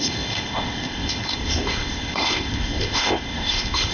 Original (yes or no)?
no